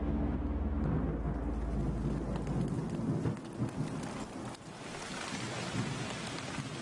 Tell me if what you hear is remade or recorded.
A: recorded